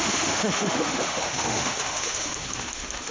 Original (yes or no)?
no